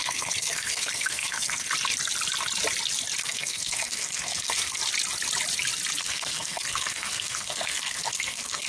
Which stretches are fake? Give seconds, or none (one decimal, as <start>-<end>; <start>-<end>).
0.0-1.7; 3.2-4.8; 6.0-8.7